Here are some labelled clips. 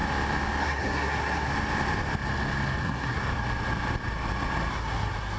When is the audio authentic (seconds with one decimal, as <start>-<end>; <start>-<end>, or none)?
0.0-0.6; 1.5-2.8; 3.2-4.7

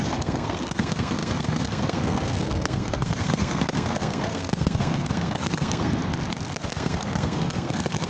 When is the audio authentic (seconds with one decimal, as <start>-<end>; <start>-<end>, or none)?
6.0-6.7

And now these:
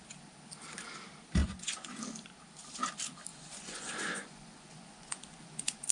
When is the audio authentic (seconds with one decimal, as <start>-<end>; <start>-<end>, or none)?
0.0-1.4; 2.0-3.3